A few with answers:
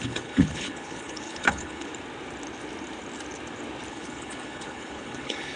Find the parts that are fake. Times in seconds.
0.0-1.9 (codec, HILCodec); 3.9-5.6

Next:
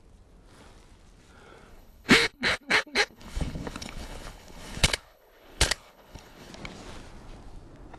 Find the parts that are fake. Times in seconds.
1.7-6.5 (codec, HILCodec)

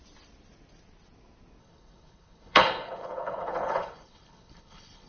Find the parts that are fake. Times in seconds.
1.6-5.1 (codec, HILCodec)

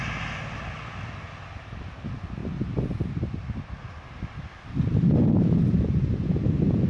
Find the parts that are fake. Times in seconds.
none

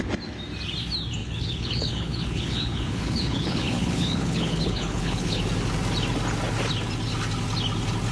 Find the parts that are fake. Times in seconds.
1.2-5.4 (codec, HILCodec)

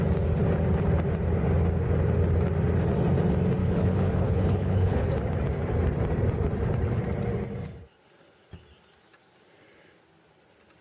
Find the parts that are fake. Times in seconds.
3.6-5.1 (codec, HILCodec)

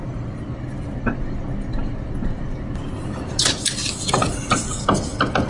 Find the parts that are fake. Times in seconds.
none